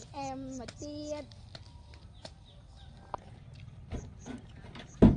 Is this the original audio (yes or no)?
yes